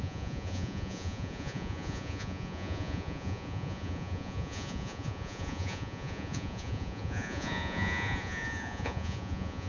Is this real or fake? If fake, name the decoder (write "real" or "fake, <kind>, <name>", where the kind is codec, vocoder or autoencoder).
fake, vocoder, Vocos